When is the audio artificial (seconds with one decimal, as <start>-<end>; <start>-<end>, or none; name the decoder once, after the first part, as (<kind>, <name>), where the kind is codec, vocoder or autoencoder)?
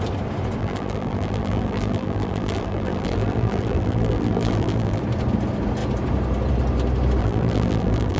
0.6-5.0 (vocoder, BigVGAN v2); 7.2-8.2